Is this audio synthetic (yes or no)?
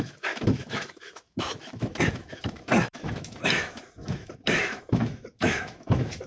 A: yes